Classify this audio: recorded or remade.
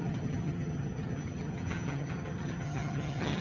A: remade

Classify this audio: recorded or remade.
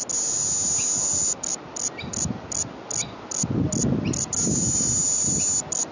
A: recorded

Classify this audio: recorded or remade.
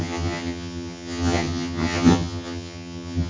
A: remade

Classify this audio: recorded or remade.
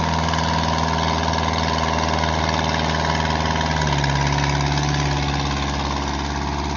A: recorded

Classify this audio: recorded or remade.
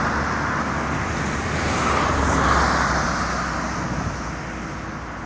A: recorded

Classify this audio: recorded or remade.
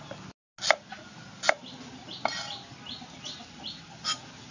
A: recorded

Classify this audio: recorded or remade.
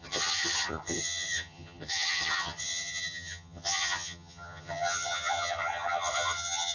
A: remade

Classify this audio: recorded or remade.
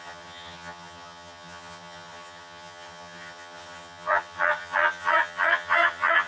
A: remade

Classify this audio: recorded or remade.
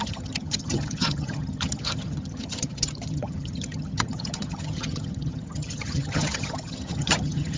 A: remade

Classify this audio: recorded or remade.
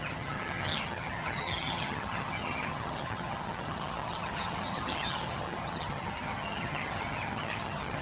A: remade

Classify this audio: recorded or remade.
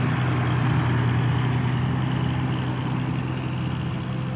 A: recorded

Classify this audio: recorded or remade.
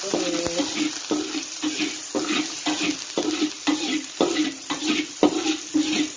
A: recorded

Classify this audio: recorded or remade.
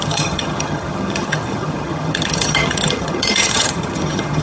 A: remade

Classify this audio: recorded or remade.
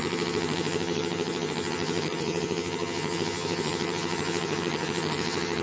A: remade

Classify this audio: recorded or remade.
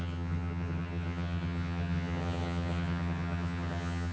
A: remade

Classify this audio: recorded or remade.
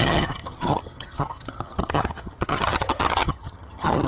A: remade